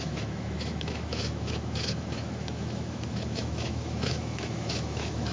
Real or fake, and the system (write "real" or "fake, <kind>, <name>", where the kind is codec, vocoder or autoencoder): fake, autoencoder, DAC-VAE